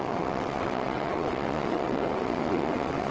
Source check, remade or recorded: remade